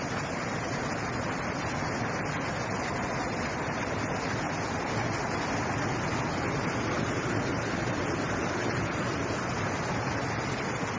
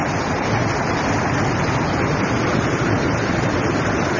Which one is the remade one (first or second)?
second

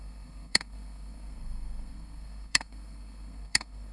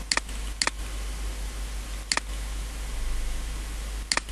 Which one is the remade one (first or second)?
first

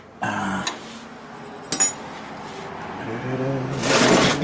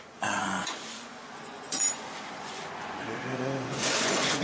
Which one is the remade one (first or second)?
second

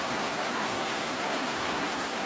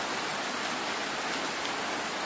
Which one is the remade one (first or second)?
first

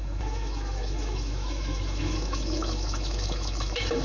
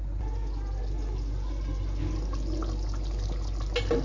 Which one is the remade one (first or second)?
first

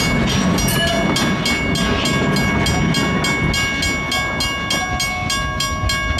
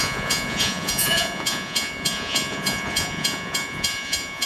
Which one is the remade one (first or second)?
second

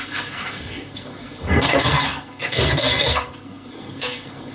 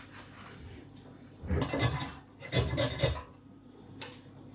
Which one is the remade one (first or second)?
first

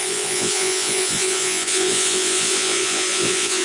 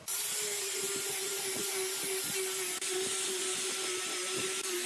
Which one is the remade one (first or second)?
first